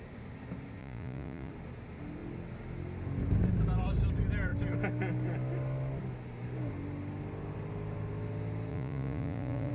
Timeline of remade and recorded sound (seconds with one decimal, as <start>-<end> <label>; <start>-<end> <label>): 0.0-0.8 recorded; 0.8-1.5 remade; 1.5-8.7 recorded; 8.7-9.7 remade